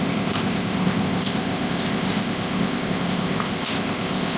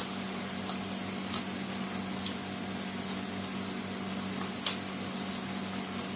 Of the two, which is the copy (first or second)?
first